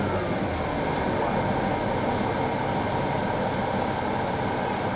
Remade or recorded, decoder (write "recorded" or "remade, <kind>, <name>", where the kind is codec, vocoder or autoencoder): recorded